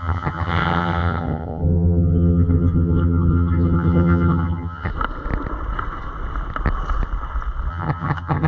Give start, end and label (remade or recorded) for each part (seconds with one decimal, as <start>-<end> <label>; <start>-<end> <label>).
0.0-4.9 remade; 4.9-7.7 recorded; 7.7-8.5 remade